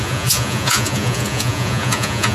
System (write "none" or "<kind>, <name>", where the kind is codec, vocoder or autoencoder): vocoder, Vocos